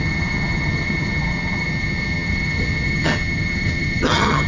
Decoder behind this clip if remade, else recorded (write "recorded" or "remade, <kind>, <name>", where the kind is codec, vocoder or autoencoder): remade, vocoder, HiFi-GAN